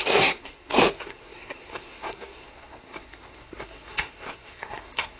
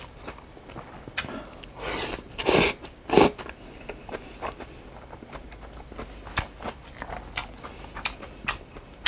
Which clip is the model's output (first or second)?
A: first